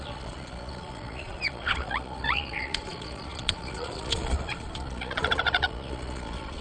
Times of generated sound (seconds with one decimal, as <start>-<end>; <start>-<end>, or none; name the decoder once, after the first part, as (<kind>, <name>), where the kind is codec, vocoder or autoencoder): 0.0-6.6 (vocoder, Vocos)